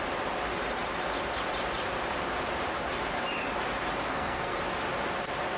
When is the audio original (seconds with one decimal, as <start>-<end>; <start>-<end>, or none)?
0.0-4.0; 4.6-5.6